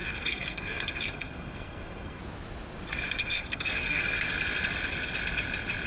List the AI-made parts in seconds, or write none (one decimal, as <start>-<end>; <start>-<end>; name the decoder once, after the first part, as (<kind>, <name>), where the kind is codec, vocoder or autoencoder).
0.0-2.2 (codec, SNAC); 3.2-4.0